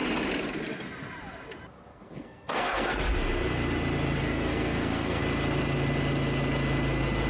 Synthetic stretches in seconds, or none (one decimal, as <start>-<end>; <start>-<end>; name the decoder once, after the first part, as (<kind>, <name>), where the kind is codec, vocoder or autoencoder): 1.9-3.0 (codec, SNAC); 4.2-5.2